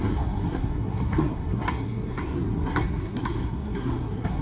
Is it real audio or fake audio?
fake